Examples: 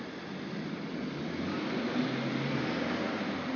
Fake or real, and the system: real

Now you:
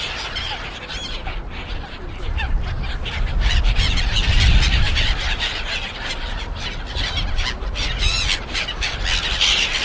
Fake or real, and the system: real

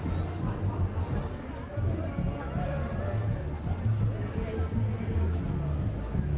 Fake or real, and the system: real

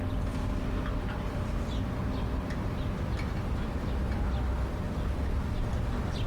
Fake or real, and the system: real